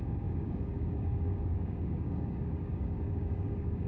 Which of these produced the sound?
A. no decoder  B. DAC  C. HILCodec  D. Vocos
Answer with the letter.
B